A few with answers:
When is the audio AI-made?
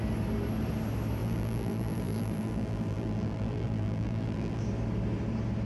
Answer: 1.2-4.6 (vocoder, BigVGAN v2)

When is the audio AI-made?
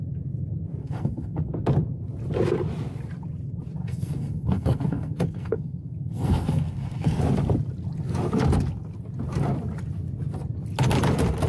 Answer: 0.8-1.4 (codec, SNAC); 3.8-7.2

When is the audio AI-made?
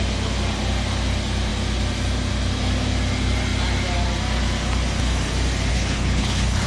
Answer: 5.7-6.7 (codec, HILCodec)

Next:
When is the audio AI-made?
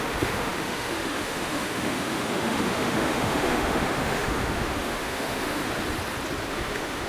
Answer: 0.0-5.6 (autoencoder, DAC-VAE); 6.5-7.1